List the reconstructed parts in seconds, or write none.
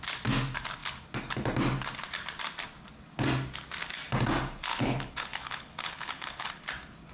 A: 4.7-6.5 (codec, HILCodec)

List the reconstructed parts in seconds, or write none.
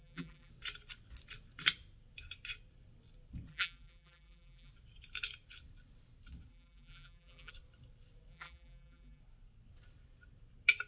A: 0.0-0.5 (vocoder, BigVGAN v2); 3.5-4.7; 6.5-7.5; 8.3-9.2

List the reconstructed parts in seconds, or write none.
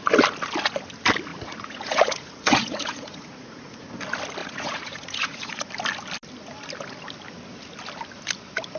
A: 1.3-4.0 (vocoder, Vocos); 4.4-5.7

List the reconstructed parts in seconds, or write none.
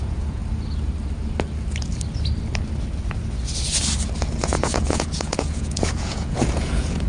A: 0.0-0.4 (vocoder, Vocos); 4.4-7.1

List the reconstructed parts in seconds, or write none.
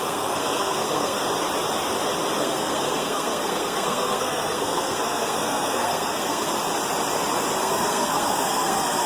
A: 0.0-1.2 (codec, SNAC); 2.4-6.5; 7.6-9.1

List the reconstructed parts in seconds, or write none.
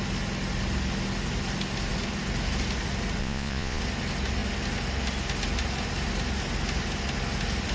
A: 3.2-3.8 (vocoder, Vocos)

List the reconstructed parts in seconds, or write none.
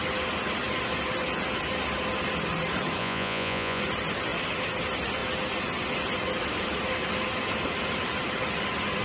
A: 3.0-3.8 (vocoder, Vocos)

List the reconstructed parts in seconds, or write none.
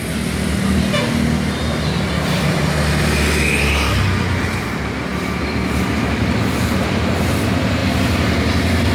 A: none